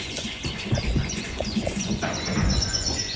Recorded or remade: remade